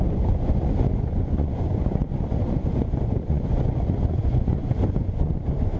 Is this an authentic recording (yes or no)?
no